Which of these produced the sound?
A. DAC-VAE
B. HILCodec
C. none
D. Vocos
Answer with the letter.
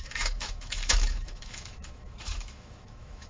A